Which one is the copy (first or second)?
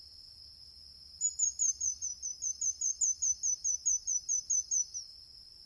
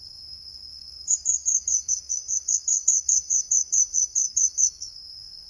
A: second